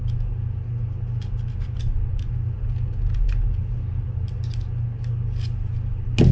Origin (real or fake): real